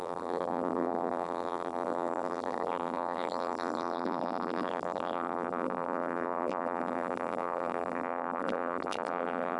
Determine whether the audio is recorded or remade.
remade